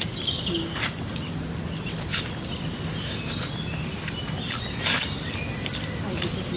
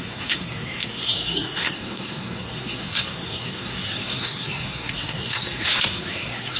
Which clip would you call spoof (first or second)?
second